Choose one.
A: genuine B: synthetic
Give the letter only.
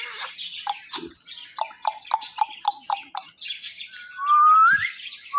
A